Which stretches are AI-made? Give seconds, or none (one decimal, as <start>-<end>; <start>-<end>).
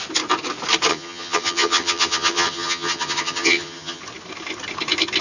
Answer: 0.9-4.0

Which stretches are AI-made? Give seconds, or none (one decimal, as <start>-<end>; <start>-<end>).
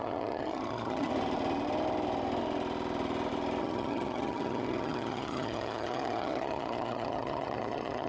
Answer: 0.0-1.1; 3.6-8.1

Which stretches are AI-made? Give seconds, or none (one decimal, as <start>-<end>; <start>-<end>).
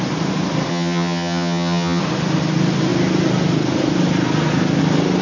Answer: 0.7-2.0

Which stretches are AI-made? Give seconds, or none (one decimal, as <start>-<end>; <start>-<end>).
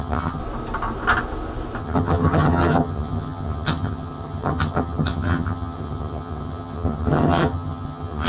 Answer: 0.0-0.4; 1.8-8.3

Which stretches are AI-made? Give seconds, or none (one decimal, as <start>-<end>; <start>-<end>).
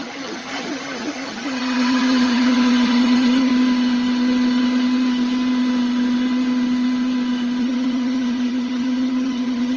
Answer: 0.0-3.5; 7.6-9.8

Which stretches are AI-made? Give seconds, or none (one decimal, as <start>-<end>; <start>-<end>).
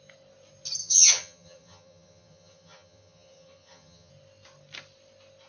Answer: 0.8-4.1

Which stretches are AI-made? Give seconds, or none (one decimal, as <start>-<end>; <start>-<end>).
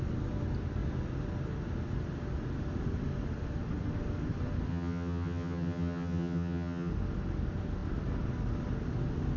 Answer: 4.7-6.9